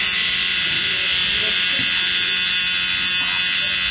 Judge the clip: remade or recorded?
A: recorded